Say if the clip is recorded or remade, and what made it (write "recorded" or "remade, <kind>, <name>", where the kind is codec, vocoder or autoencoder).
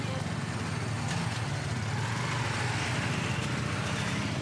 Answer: recorded